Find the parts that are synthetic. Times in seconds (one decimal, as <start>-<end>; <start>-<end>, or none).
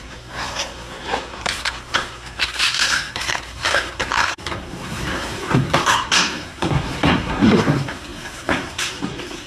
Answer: 0.0-9.5